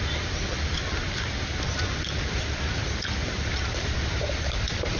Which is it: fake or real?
real